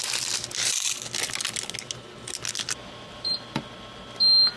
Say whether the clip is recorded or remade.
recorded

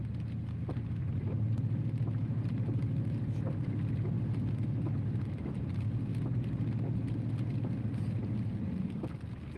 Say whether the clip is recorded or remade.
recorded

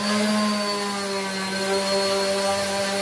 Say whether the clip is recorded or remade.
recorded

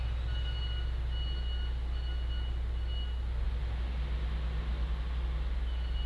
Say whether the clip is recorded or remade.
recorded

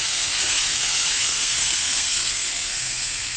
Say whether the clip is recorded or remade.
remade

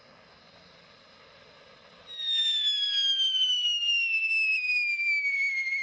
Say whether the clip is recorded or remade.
recorded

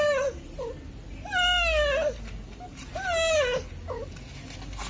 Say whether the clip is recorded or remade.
recorded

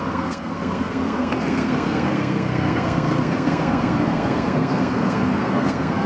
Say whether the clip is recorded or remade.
remade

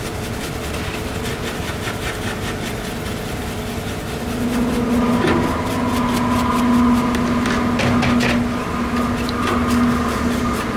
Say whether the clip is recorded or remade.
recorded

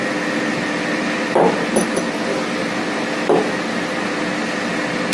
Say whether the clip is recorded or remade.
recorded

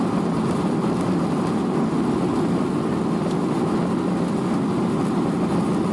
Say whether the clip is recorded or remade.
recorded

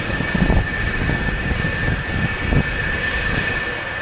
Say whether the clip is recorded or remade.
recorded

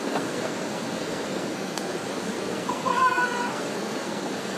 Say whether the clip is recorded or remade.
remade